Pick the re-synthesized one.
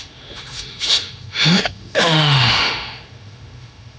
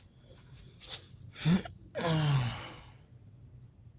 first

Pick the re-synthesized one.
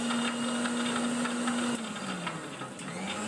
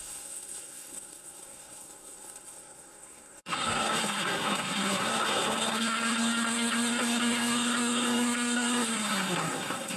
second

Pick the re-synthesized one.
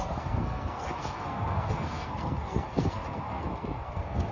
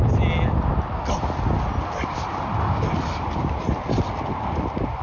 first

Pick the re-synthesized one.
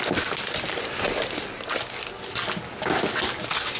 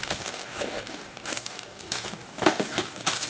second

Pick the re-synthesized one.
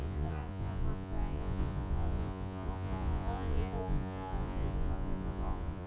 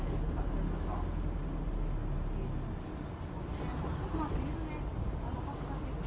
first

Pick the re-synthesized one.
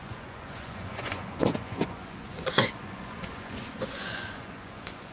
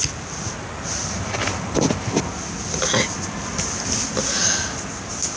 first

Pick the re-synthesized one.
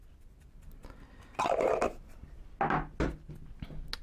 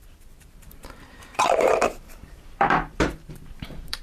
second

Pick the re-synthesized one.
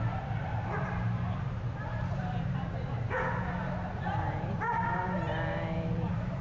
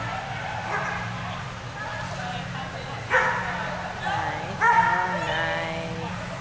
first